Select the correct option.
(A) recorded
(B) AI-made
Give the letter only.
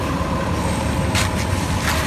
A